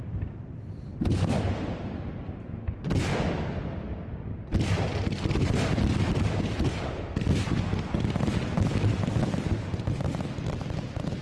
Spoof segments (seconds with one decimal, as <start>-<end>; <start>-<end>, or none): none